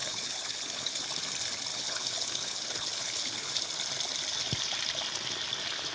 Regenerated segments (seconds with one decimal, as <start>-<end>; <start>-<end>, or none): 0.0-1.0; 1.7-3.5